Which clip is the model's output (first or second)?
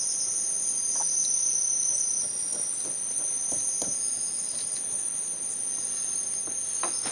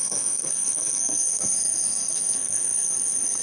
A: second